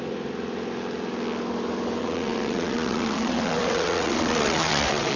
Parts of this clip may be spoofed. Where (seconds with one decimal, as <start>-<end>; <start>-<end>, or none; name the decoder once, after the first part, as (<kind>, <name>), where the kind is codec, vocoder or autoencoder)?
2.0-5.2 (vocoder, WaveNeXt)